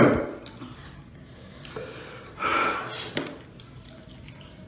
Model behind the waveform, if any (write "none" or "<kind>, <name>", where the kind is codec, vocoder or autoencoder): vocoder, BigVGAN v2